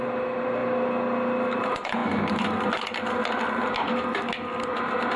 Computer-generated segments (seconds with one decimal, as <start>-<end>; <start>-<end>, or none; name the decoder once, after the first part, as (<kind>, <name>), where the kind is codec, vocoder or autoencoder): none